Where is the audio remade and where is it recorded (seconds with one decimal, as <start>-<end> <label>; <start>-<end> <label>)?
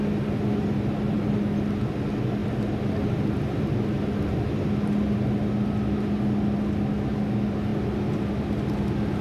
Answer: 0.0-9.2 recorded